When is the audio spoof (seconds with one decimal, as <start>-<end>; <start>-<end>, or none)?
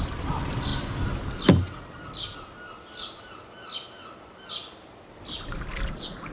none